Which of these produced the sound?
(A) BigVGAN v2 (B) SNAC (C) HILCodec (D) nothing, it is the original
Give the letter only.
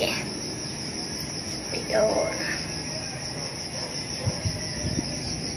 D